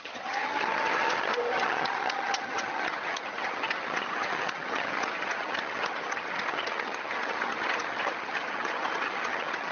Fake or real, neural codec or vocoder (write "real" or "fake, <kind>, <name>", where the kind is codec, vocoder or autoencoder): fake, vocoder, HiFi-GAN